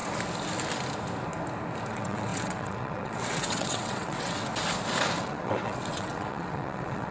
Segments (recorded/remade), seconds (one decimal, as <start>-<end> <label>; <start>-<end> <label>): 0.0-1.9 recorded; 1.9-4.5 remade; 4.5-5.2 recorded; 5.2-7.1 remade